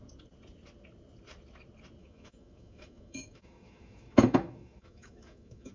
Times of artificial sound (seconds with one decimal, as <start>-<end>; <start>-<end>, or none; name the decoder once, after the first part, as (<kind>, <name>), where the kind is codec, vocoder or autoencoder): 2.0-5.7 (autoencoder, DAC-VAE)